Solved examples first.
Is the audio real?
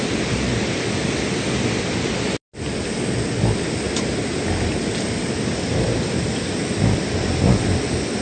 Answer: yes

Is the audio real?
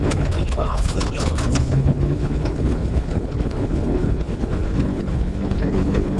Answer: no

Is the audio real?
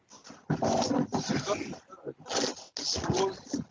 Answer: yes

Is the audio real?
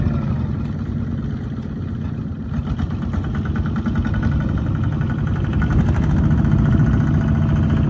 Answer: yes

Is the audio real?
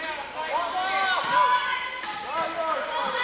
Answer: yes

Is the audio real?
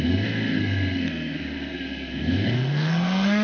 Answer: no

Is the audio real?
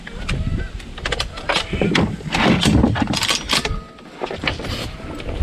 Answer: yes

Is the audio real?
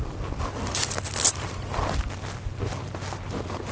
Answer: yes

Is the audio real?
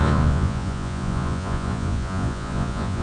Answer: no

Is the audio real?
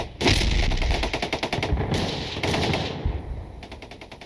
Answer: yes